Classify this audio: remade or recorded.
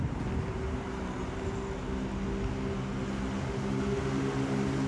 recorded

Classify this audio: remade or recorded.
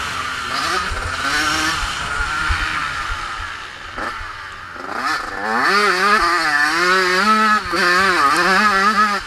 recorded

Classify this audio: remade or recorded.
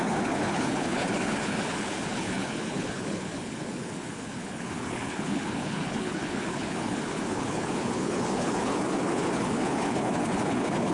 remade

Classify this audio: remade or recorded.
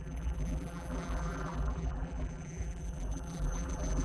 remade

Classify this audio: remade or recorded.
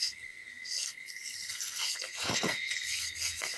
remade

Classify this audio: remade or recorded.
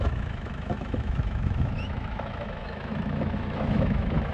remade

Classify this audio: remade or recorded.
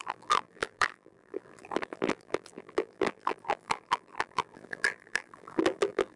remade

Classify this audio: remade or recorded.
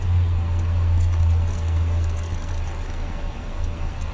remade